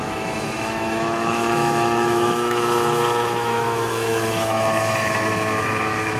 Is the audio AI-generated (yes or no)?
yes